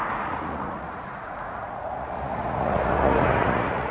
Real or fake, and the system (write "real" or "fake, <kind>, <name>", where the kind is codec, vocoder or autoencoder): fake, vocoder, Vocos